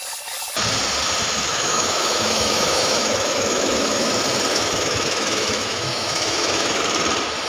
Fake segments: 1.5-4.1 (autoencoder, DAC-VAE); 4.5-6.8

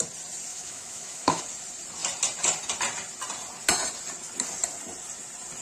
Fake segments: 0.5-1.4 (autoencoder, DAC-VAE)

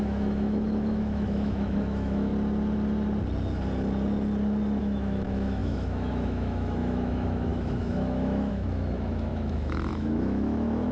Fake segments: 0.0-2.3 (autoencoder, DAC-VAE); 4.8-10.9

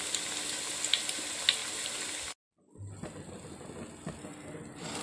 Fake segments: none

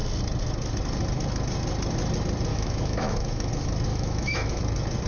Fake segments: 2.5-3.5 (autoencoder, DAC-VAE); 3.9-4.6

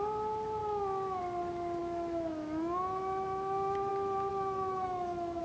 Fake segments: 0.6-1.2 (autoencoder, DAC-VAE); 1.8-3.9; 4.3-5.4